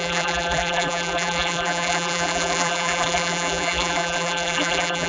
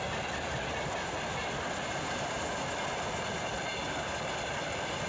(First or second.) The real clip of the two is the second